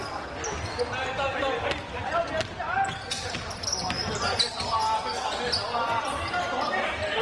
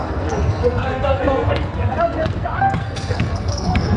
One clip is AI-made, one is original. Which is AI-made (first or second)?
second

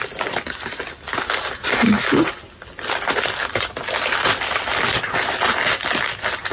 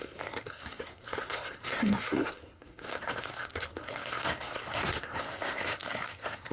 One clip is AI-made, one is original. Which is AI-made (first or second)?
second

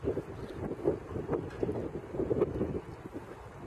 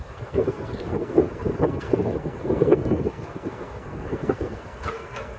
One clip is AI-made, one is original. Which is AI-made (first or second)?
second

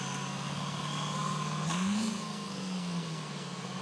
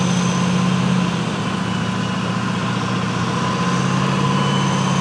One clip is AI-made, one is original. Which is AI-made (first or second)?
first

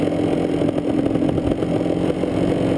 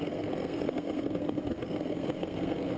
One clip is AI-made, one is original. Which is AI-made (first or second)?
second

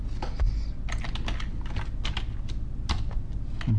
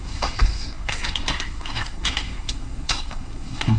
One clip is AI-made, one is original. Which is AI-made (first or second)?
second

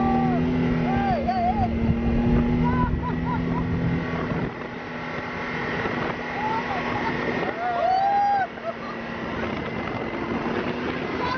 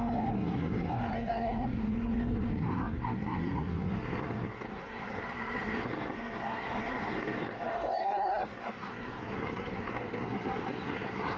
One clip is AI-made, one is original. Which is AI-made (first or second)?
second